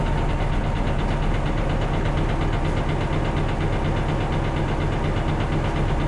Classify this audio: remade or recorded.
recorded